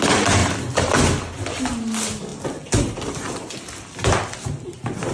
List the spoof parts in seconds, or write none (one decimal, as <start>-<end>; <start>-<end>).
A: none